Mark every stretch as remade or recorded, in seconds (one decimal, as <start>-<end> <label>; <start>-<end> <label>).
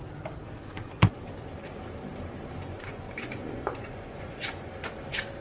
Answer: 0.0-0.6 recorded; 0.6-1.3 remade; 1.3-2.6 recorded; 2.6-4.7 remade; 4.7-5.4 recorded